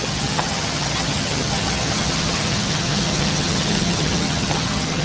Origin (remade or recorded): remade